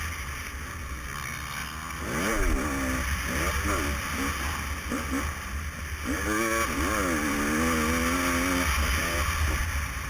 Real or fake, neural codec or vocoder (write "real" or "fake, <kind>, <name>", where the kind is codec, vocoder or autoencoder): real